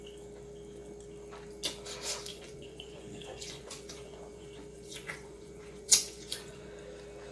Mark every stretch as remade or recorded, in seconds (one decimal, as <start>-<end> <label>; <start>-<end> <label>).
0.0-2.3 recorded; 2.3-6.7 remade; 6.7-7.3 recorded